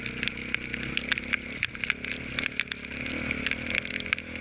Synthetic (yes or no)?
no